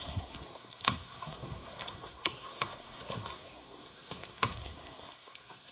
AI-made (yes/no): yes